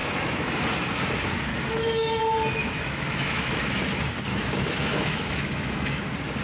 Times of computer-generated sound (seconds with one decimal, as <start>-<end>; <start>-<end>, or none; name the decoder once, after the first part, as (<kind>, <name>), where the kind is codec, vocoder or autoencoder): 0.0-0.6 (autoencoder, DAC-VAE); 1.5-2.2; 2.6-3.8; 4.3-6.0

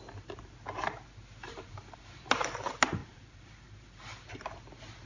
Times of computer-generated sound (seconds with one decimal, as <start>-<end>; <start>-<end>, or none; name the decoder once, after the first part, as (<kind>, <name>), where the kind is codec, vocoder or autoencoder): 1.4-2.5 (vocoder, BigVGAN v2); 3.0-4.3

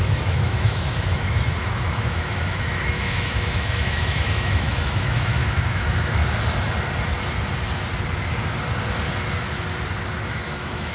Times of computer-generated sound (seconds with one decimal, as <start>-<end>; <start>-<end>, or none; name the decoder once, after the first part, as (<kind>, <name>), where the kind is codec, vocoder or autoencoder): 0.0-6.2 (autoencoder, DAC-VAE); 10.3-10.9

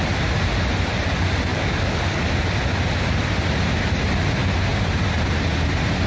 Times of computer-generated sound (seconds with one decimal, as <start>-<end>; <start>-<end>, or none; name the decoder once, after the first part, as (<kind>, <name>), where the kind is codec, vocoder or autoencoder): 1.5-2.3 (codec, DAC)

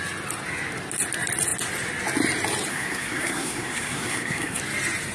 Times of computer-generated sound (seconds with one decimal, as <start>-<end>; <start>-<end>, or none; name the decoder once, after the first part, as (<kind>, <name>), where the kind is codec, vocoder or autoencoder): 2.7-4.6 (codec, SNAC)

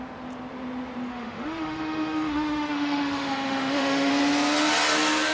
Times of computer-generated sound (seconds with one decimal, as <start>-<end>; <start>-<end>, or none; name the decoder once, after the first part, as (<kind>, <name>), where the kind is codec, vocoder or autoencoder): 1.1-4.1 (autoencoder, DAC-VAE)

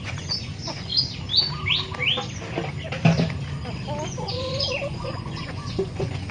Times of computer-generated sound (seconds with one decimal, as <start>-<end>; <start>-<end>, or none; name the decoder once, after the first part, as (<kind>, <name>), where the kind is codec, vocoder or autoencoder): 0.0-0.9 (vocoder, Vocos); 4.1-6.3

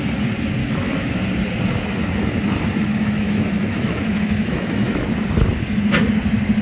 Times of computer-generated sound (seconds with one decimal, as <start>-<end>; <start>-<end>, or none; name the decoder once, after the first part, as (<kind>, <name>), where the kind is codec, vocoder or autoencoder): 0.6-1.2 (autoencoder, DAC-VAE); 2.9-5.1